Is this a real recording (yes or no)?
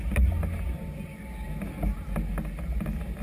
yes